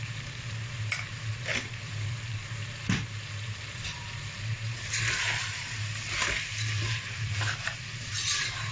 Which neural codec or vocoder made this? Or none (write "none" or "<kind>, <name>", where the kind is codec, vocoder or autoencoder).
vocoder, BigVGAN v2